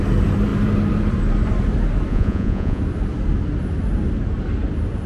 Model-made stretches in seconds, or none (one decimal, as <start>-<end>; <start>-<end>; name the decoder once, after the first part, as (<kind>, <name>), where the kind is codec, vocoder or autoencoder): 2.1-2.8 (vocoder, Vocos)